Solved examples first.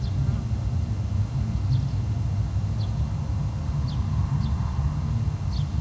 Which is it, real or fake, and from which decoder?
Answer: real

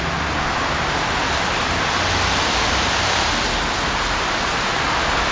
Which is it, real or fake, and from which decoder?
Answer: real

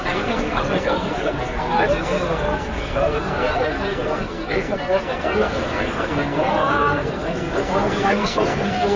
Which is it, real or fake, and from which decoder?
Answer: fake, codec, SNAC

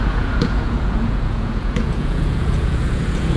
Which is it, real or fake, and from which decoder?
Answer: fake, vocoder, Vocos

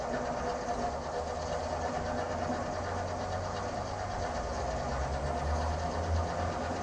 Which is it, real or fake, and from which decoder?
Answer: real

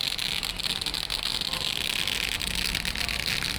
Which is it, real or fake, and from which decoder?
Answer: real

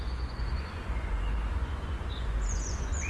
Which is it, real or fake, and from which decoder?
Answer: fake, vocoder, Vocos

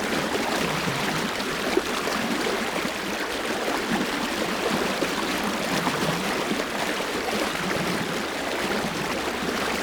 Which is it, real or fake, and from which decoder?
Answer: fake, vocoder, BigVGAN v2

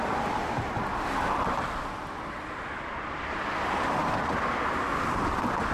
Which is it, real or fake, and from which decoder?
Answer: real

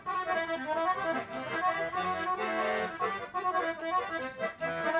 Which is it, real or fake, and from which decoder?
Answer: real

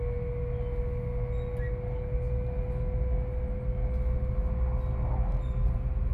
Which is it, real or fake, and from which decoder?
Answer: real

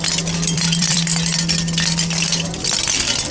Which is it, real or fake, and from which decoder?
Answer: fake, vocoder, BigVGAN v2